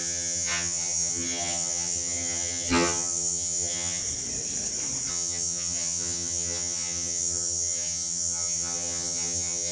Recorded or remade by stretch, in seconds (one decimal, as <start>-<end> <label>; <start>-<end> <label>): 0.0-4.0 remade; 4.0-5.1 recorded; 5.1-9.7 remade